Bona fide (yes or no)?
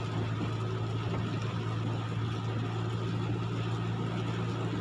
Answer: yes